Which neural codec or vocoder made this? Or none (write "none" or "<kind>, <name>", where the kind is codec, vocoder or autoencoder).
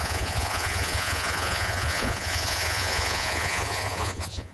vocoder, Vocos